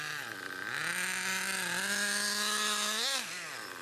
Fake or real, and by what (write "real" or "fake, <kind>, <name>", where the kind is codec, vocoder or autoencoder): real